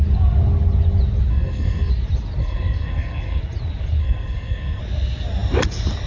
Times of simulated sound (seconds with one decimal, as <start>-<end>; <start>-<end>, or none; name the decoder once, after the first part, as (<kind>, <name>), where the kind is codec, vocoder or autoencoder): 1.3-1.9 (codec, SNAC); 2.4-3.4; 4.0-4.8